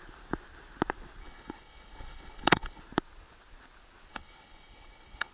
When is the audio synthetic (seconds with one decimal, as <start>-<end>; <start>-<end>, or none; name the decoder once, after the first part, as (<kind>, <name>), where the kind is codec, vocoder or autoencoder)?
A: 1.2-2.8 (codec, HILCodec); 4.1-5.3

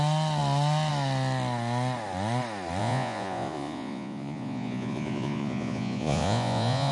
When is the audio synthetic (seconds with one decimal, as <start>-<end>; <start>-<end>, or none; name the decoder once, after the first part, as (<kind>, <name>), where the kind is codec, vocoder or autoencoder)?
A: 2.8-6.9 (vocoder, Vocos)

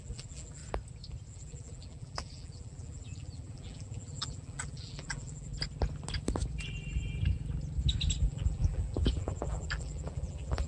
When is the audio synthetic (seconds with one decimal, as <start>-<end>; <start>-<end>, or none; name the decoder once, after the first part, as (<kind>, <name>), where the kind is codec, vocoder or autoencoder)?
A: 0.0-0.6 (vocoder, BigVGAN v2); 1.3-5.5; 8.2-10.7

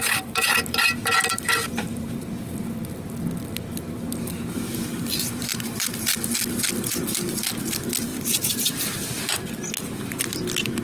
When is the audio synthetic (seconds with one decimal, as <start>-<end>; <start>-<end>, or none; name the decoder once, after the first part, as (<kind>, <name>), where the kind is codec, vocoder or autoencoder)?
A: 1.6-2.3 (vocoder, BigVGAN v2); 5.1-6.1; 8.1-9.2

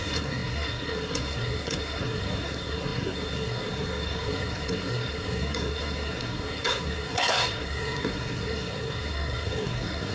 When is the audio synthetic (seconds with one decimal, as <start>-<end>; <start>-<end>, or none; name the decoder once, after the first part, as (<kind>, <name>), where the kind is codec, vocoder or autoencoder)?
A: 0.0-10.1 (codec, SNAC)